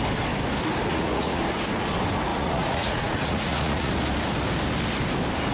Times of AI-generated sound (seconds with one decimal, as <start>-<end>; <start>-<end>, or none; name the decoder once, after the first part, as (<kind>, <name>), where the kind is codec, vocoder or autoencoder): 0.9-1.4 (vocoder, Vocos); 2.3-3.9